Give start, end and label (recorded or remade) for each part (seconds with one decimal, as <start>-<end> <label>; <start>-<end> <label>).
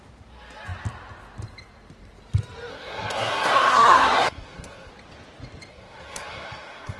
0.0-2.7 recorded; 2.7-4.9 remade; 4.9-5.7 recorded; 5.7-7.0 remade